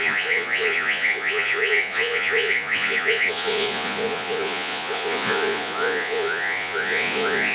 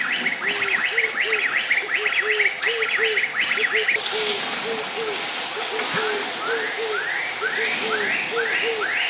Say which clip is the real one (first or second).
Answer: second